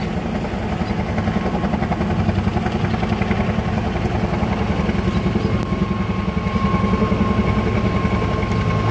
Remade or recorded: recorded